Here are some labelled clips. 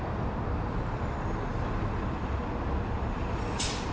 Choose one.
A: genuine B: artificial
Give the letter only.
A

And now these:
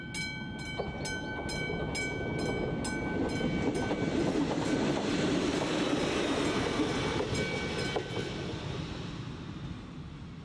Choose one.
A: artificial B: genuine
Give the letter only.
B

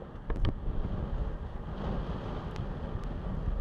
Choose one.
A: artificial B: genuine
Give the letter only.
B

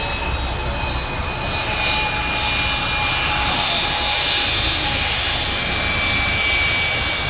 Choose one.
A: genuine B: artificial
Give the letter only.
A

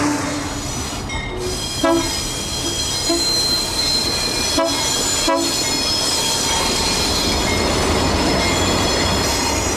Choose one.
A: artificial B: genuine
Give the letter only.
B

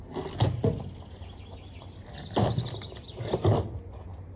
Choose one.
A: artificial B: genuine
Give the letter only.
B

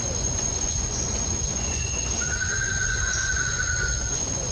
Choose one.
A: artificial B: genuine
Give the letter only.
A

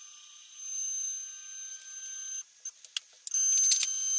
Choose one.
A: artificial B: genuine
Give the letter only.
B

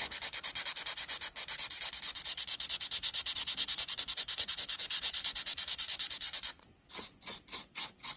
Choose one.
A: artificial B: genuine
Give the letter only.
A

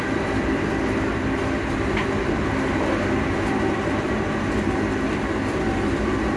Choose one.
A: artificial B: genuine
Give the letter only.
B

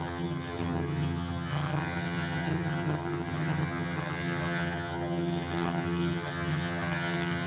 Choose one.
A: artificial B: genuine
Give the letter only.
A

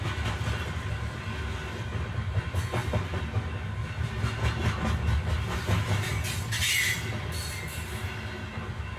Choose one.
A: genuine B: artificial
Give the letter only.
A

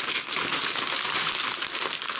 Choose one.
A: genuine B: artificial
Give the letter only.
A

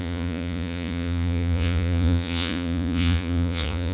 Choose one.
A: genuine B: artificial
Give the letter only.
B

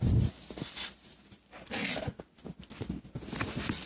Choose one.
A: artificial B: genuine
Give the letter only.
B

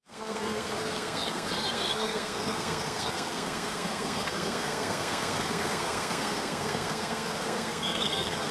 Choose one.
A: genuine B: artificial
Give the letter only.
B